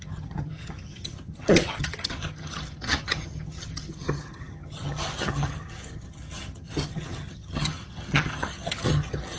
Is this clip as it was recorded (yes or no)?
no